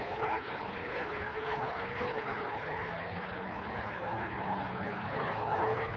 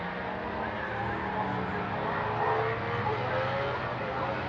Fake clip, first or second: first